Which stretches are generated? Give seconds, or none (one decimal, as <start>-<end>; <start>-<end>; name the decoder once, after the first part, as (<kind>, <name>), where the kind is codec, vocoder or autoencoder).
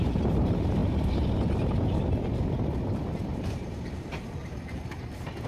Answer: 3.3-4.0 (vocoder, BigVGAN v2); 4.4-5.1